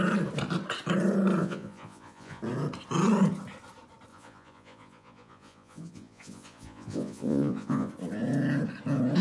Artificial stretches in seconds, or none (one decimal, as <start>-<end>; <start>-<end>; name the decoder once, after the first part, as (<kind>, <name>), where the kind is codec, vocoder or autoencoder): 1.4-2.4 (vocoder, Vocos); 4.1-7.9